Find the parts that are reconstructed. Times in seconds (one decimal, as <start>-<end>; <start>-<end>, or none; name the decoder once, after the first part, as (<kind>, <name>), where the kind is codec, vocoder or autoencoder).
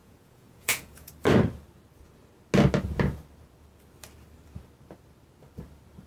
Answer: 0.0-1.1 (vocoder, Vocos)